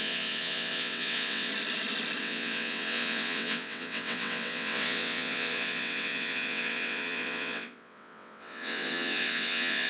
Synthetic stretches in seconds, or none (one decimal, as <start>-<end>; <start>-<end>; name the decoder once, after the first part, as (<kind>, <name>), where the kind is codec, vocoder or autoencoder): 0.0-1.5 (vocoder, WaveNeXt); 2.2-9.9